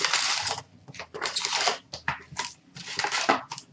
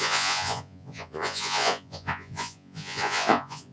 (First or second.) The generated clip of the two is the second